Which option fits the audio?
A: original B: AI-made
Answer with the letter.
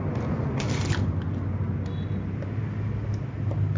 A